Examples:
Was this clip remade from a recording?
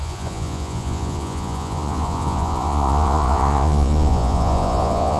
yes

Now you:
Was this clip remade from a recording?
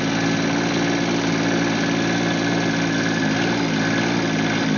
no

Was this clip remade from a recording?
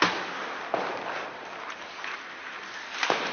no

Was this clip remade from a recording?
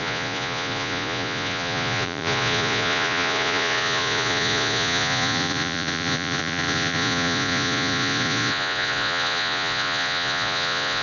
yes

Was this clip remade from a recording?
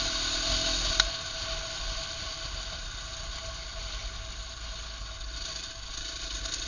no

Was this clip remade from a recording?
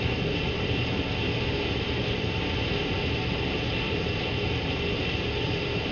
no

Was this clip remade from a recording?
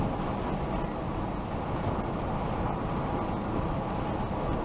no